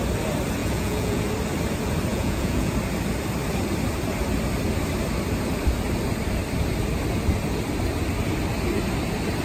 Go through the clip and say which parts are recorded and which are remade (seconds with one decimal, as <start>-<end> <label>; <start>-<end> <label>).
0.0-0.6 recorded; 0.6-1.2 remade; 1.2-2.1 recorded; 2.1-2.7 remade; 2.7-9.4 recorded